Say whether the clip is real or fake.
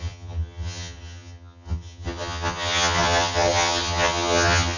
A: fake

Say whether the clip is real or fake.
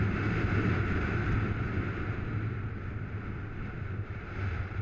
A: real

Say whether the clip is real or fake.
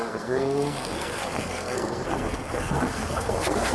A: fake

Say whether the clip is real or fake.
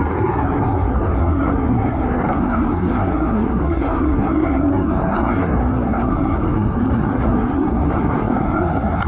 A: fake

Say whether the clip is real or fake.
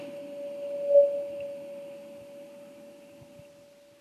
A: real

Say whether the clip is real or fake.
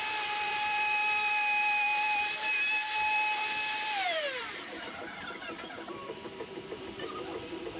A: fake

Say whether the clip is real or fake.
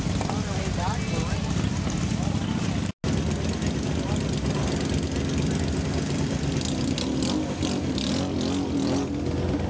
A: real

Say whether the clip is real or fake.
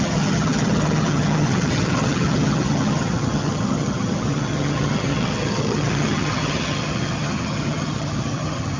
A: fake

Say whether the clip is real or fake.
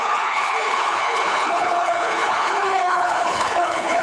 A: fake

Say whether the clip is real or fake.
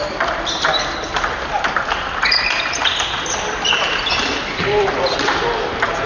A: fake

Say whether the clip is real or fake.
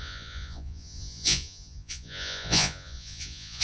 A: fake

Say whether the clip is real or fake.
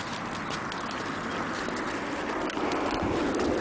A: real